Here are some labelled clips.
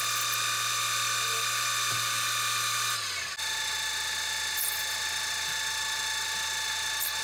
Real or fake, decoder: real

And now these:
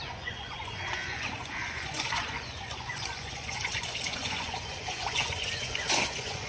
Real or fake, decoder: fake, vocoder, Vocos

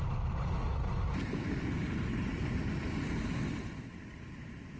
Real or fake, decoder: real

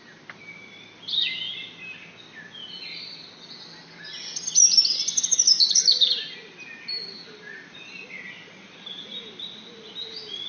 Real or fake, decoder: real